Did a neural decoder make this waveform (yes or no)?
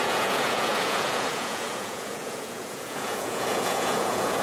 yes